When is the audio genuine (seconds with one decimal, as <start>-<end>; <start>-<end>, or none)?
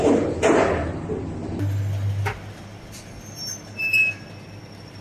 0.0-5.0